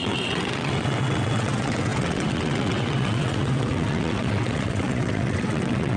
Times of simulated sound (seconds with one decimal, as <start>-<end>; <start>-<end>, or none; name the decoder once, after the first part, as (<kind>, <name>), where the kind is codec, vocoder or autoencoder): 0.0-6.0 (vocoder, WaveNeXt)

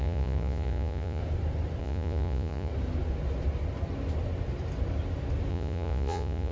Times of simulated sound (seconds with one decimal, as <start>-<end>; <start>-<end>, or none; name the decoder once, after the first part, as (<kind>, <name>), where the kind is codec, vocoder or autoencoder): 0.0-1.2 (vocoder, Vocos); 1.8-2.7; 5.5-6.5

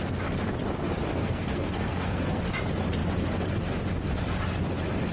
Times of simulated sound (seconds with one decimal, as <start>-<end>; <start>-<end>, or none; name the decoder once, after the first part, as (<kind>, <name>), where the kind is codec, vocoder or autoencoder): 1.2-2.4 (codec, SNAC)

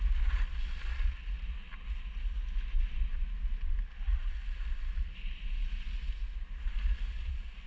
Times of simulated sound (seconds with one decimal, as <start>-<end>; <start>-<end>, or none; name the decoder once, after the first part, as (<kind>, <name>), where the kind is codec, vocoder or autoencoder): none

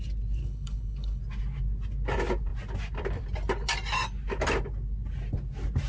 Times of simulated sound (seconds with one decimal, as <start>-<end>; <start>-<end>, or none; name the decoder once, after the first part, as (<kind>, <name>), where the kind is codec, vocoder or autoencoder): 0.4-1.2 (codec, HILCodec)

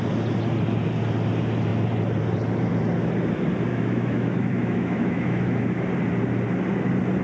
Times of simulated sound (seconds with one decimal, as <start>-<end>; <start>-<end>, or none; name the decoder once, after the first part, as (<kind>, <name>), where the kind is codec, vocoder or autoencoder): 3.7-5.8 (autoencoder, DAC-VAE)